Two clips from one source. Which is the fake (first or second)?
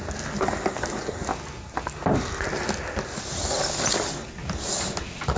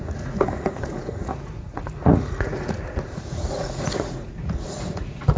second